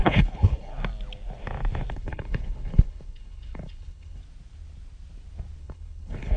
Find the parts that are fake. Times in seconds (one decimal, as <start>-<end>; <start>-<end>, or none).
0.0-0.7; 1.9-4.2; 5.6-6.4